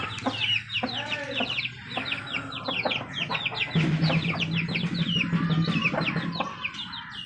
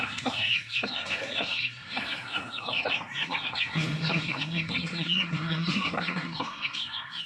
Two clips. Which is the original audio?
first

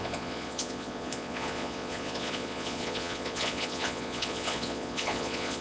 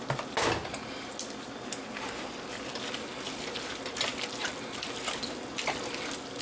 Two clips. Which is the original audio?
second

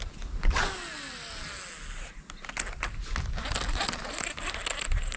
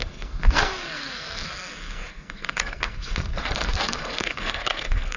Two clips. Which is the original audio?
first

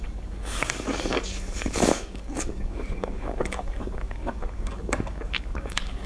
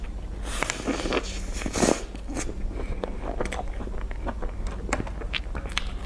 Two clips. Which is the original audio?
second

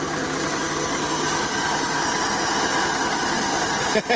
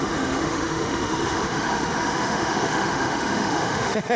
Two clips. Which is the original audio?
first